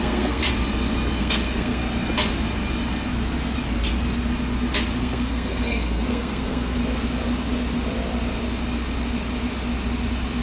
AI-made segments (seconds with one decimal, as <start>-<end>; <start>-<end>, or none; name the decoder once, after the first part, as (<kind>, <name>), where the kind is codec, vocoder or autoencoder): 0.0-0.4 (codec, SNAC); 1.2-1.8; 5.0-6.8